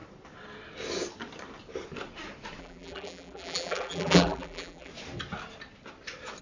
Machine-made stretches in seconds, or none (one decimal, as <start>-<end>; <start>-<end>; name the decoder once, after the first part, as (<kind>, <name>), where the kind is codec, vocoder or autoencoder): 2.6-4.9 (vocoder, BigVGAN v2)